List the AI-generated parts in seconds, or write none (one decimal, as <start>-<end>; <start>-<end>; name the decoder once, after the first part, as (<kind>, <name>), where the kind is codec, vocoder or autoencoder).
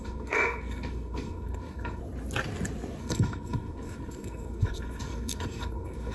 0.0-2.0 (codec, SNAC); 3.0-6.1